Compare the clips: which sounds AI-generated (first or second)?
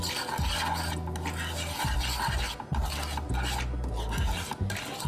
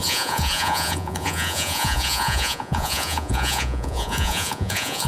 second